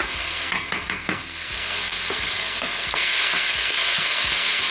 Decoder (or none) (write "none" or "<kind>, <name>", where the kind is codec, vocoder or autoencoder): codec, SNAC